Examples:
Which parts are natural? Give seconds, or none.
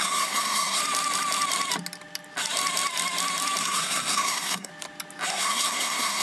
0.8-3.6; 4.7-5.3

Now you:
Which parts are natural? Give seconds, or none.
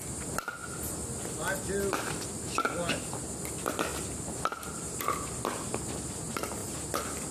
0.0-7.3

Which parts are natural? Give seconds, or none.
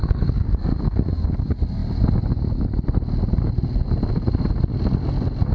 1.0-5.5